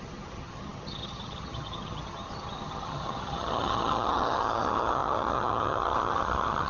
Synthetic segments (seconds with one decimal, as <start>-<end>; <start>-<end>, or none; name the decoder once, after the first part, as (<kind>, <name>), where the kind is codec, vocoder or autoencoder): 0.0-6.7 (vocoder, HiFi-GAN)